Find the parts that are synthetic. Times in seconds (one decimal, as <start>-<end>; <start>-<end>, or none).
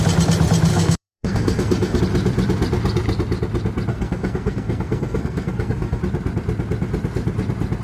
0.7-2.0; 3.9-6.0